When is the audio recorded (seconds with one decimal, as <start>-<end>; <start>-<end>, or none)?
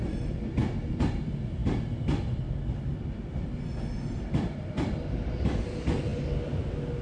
0.0-7.0